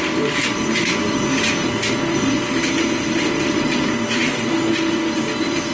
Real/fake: real